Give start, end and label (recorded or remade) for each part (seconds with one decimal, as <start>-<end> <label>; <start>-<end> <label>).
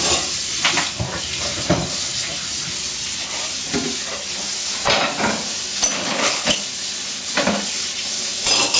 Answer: 0.0-6.0 recorded; 6.0-6.6 remade; 6.6-8.8 recorded